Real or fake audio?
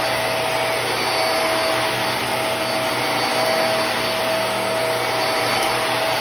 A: real